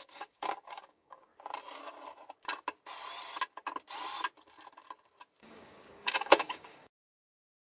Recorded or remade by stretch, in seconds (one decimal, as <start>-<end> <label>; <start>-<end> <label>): 0.0-1.3 remade; 1.3-5.4 recorded; 5.4-7.6 remade